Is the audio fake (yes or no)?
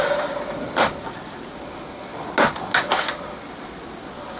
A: no